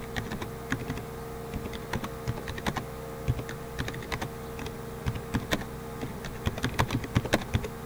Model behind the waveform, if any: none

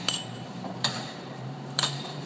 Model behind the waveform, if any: vocoder, BigVGAN v2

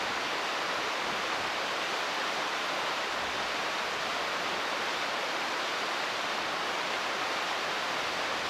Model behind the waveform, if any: none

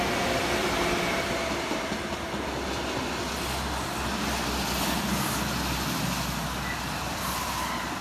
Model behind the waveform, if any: none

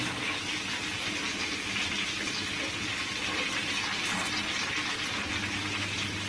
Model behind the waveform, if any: none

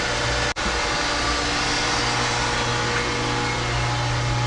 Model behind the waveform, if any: none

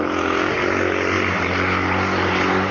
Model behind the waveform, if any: none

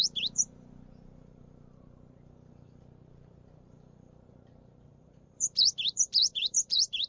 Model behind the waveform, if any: vocoder, BigVGAN v2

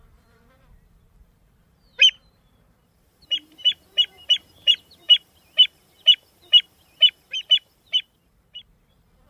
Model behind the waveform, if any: vocoder, BigVGAN v2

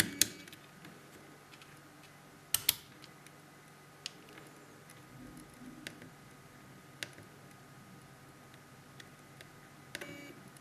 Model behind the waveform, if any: none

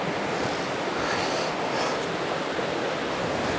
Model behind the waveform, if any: none